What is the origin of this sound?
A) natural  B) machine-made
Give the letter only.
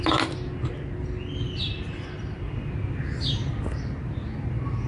A